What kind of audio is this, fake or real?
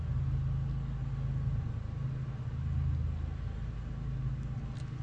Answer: real